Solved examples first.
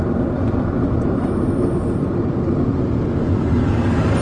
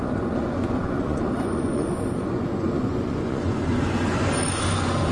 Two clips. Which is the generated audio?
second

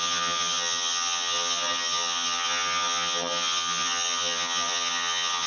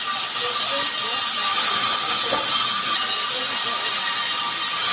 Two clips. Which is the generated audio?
first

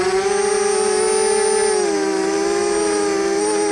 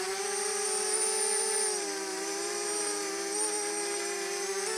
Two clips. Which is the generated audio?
second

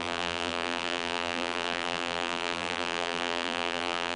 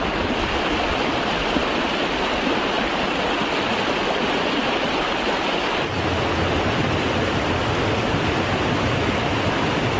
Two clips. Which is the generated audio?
first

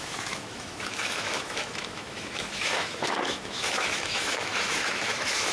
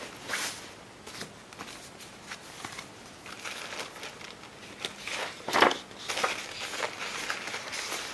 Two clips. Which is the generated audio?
first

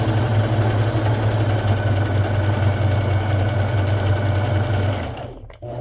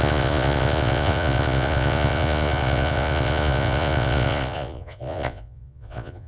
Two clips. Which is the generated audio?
second